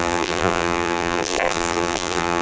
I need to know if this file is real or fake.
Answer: fake